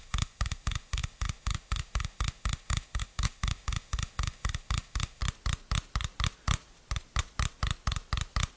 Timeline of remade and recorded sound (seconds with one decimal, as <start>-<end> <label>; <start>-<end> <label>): 0.0-5.2 remade; 5.2-8.6 recorded